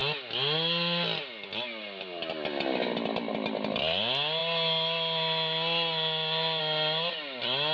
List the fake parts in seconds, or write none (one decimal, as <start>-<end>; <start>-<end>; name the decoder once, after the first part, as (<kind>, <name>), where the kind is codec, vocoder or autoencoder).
none